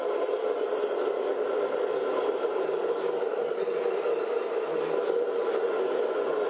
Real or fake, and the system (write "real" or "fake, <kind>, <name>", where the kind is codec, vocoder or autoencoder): real